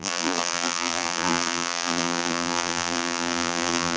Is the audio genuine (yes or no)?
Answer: no